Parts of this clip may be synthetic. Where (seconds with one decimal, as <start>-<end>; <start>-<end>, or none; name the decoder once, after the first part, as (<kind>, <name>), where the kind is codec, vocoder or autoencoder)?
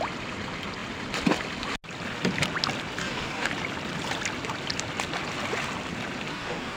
3.0-3.5 (codec, DAC); 6.3-6.8